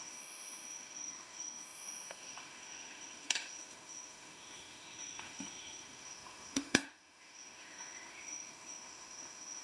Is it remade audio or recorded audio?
remade